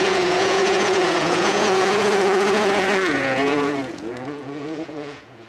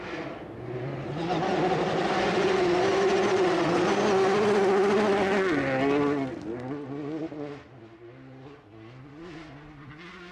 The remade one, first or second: first